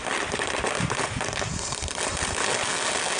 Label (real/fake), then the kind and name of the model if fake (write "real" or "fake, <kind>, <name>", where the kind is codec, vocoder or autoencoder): real